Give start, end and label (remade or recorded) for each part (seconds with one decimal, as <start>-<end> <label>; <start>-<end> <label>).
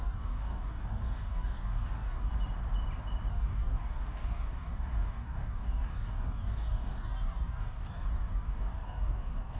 0.0-2.3 remade; 2.3-3.3 recorded; 3.3-9.6 remade